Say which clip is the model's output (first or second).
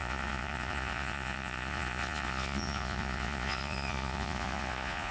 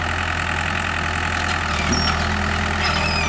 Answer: first